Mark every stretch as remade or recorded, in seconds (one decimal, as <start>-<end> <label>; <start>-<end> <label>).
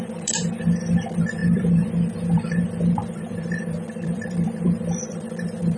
0.0-5.8 remade